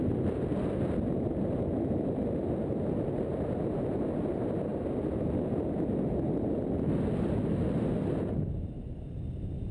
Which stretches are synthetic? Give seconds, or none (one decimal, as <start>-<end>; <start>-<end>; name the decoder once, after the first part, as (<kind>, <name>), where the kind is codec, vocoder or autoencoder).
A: none